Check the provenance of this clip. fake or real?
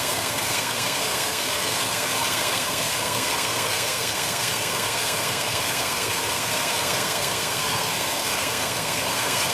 fake